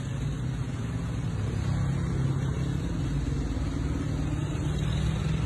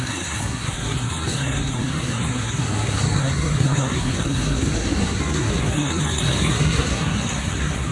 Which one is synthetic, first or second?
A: second